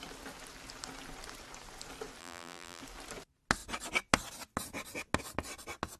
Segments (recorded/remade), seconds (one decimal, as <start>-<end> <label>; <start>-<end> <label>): 0.0-2.2 recorded; 2.2-2.8 remade; 2.8-6.0 recorded